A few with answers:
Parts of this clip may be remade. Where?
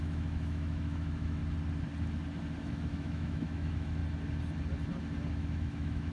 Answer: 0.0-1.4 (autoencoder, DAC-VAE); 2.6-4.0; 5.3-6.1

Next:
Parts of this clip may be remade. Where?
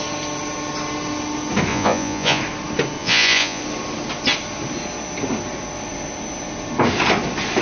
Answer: 1.7-2.4 (vocoder, Vocos); 3.0-3.6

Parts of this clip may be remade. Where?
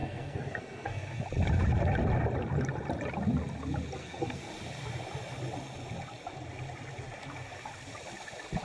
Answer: 0.0-1.2 (codec, SNAC); 4.0-4.5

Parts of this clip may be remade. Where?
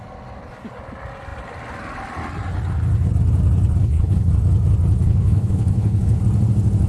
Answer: 3.8-4.3 (codec, HILCodec); 5.0-6.2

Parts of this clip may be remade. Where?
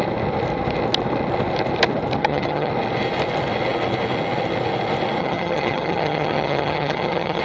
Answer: 2.2-2.7 (vocoder, HiFi-GAN); 5.2-7.4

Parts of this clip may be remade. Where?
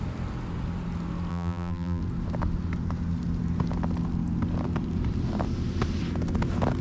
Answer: 1.3-2.0 (vocoder, BigVGAN v2)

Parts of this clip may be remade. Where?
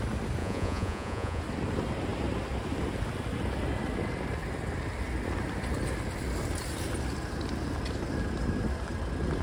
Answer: 0.4-1.4 (vocoder, Vocos)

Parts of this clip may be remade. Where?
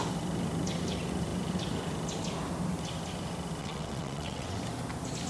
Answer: 3.6-4.6 (vocoder, WaveNeXt)